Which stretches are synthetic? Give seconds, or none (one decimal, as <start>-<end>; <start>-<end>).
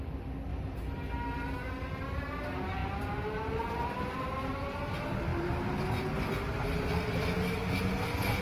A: none